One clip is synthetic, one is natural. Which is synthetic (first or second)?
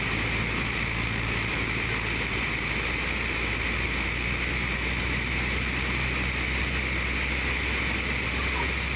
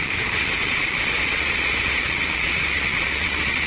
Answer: second